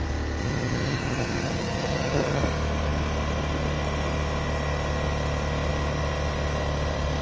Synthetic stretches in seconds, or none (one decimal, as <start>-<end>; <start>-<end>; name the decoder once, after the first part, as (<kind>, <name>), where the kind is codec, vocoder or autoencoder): 0.4-2.4 (vocoder, HiFi-GAN)

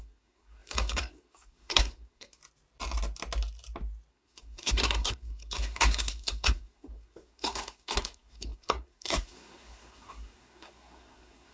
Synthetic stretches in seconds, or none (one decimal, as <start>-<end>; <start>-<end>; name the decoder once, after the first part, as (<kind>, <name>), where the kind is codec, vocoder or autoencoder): 0.0-2.4 (codec, SNAC); 4.1-11.5

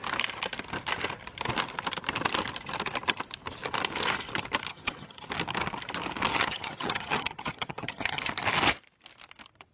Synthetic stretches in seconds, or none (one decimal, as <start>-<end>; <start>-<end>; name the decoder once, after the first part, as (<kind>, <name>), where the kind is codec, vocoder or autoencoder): 4.7-5.3 (vocoder, HiFi-GAN); 6.3-8.3

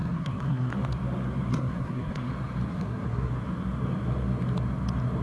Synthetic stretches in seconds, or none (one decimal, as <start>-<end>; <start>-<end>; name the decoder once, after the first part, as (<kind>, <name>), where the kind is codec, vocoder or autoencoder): 0.0-0.7 (codec, SNAC); 1.5-2.3; 2.7-3.3

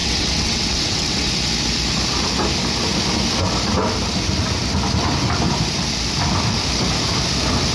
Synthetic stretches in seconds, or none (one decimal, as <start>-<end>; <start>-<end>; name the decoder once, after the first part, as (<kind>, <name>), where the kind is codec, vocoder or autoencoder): 0.0-1.3 (vocoder, WaveNeXt)

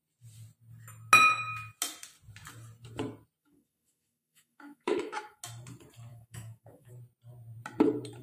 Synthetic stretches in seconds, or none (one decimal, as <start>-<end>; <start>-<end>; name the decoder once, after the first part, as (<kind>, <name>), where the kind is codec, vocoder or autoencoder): 3.4-5.4 (autoencoder, DAC-VAE); 6.1-6.9

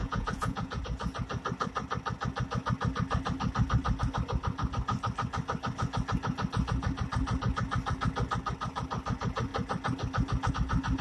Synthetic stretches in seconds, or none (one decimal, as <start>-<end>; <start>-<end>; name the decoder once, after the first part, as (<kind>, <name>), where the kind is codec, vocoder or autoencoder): 0.0-0.8 (vocoder, Vocos)